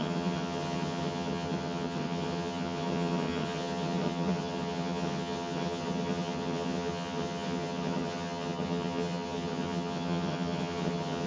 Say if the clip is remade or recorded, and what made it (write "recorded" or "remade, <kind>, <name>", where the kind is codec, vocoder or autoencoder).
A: remade, vocoder, HiFi-GAN